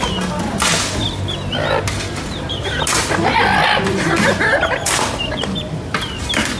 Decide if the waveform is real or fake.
real